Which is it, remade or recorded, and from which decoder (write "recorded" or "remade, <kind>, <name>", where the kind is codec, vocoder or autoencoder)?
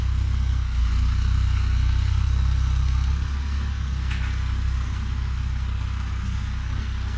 remade, codec, SNAC